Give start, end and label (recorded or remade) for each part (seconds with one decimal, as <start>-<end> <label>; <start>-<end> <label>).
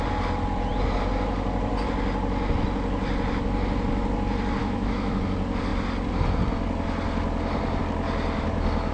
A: 0.0-4.6 recorded; 4.6-5.2 remade; 5.2-8.9 recorded